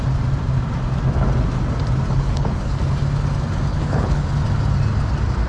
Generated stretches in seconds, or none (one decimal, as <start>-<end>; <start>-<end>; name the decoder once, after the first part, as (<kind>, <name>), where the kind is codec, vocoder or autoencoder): 2.1-2.8 (codec, HILCodec); 3.7-4.3